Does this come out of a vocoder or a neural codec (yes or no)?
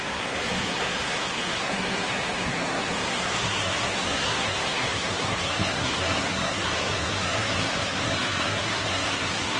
yes